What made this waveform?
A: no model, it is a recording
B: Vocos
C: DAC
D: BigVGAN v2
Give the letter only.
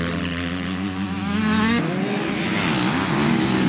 A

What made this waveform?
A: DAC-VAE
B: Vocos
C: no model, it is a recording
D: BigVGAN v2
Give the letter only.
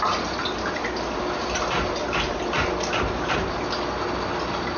C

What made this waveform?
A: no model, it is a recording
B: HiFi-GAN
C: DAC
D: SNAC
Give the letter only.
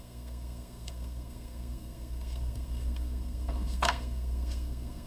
D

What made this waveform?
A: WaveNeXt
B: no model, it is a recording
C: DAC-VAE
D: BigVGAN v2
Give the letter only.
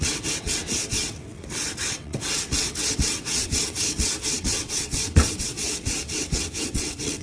A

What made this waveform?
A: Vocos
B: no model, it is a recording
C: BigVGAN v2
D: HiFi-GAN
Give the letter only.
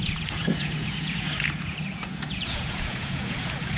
A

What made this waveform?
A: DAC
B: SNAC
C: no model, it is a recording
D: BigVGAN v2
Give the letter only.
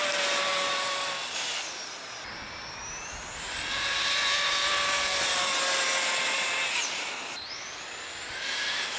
C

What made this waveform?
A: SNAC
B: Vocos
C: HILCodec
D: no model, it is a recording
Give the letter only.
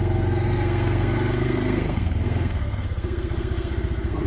A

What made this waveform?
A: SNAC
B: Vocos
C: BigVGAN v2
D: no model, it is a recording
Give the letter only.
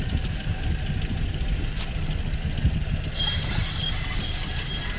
D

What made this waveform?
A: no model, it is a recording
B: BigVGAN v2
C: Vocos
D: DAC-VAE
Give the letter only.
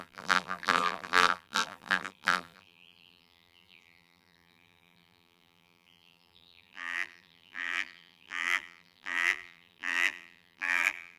B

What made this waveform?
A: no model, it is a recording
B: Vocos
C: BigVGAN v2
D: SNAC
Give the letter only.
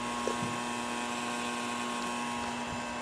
A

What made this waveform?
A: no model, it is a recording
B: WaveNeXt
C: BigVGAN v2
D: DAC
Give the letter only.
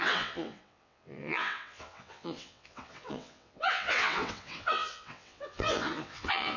B